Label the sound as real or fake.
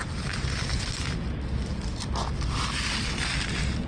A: real